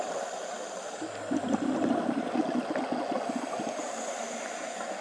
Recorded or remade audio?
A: recorded